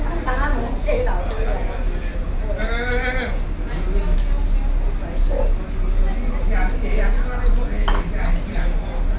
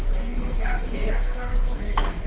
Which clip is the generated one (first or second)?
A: second